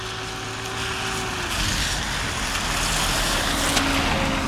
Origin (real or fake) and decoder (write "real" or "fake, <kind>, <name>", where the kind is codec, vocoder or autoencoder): real